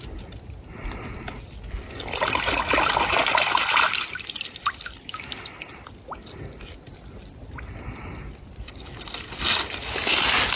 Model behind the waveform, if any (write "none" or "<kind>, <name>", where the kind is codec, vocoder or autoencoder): none